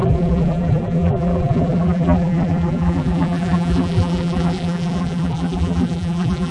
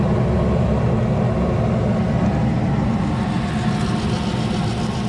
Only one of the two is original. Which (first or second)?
second